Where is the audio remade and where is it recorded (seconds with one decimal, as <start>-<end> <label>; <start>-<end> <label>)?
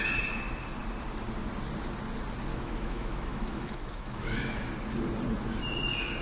0.0-2.5 recorded; 2.5-4.7 remade; 4.7-6.2 recorded